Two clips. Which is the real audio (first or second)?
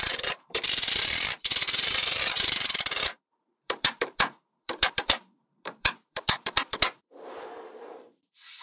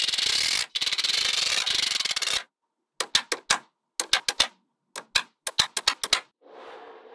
second